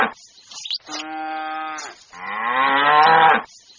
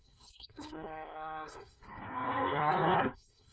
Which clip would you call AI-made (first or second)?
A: second